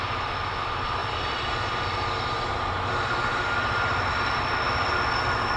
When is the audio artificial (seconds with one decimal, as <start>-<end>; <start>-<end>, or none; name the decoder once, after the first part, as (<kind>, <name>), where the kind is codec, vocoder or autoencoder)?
1.0-1.5 (vocoder, BigVGAN v2)